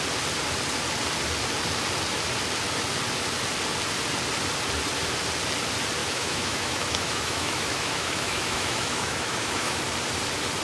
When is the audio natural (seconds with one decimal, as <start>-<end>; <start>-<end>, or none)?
0.0-6.0; 9.8-10.6